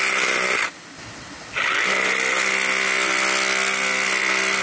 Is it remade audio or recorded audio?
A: recorded